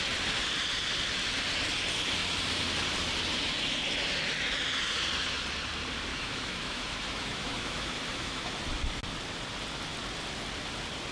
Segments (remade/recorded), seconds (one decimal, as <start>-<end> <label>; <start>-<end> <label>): 0.0-6.1 recorded; 6.1-8.6 remade; 8.6-11.1 recorded